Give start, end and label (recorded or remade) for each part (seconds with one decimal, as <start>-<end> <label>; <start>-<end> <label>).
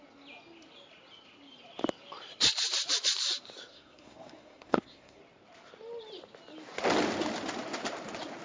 0.0-3.7 recorded; 3.7-5.2 remade; 5.2-8.4 recorded